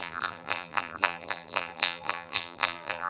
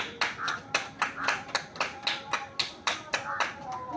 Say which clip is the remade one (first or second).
first